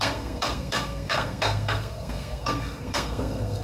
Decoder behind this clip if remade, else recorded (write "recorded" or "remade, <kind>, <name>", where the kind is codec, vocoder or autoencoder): remade, codec, SNAC